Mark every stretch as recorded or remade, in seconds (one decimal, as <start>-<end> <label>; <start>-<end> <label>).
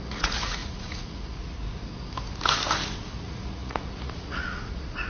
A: 0.0-1.6 remade; 1.6-3.1 recorded; 3.1-5.1 remade